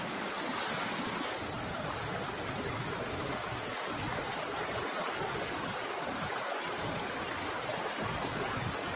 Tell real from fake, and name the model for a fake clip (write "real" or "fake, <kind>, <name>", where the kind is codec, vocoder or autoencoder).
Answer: real